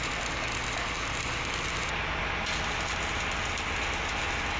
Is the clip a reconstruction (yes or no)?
no